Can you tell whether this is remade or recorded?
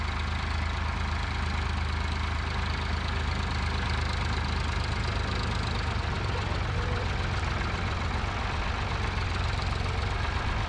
recorded